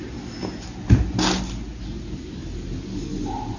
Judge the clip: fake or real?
real